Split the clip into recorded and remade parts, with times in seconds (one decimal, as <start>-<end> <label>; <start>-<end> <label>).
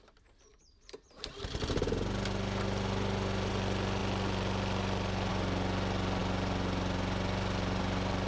0.0-8.3 recorded